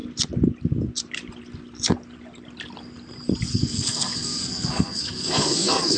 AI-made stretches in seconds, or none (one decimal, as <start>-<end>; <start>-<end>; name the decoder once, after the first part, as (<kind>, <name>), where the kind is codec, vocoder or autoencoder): 3.5-6.0 (codec, SNAC)